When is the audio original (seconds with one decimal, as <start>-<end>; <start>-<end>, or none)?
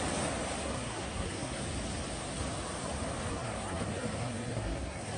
0.0-0.6; 1.6-3.3